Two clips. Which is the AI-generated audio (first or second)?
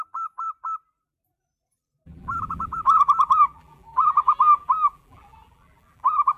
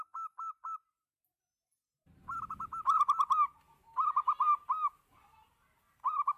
first